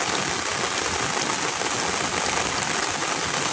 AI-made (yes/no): no